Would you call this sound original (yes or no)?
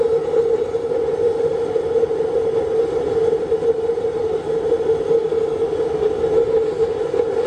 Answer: yes